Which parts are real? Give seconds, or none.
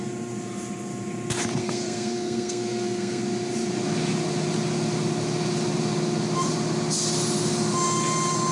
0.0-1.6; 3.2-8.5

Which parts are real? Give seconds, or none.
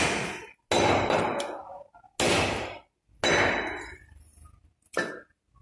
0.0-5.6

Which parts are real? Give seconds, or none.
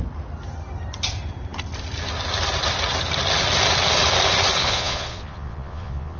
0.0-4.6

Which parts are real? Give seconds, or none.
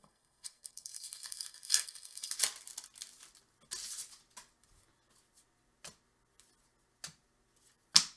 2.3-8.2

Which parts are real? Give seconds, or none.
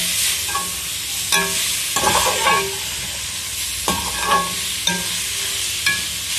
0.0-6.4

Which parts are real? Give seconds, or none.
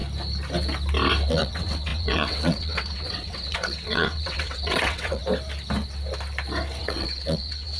0.0-1.3; 5.2-6.8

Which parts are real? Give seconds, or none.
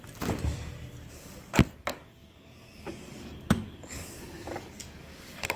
0.0-1.1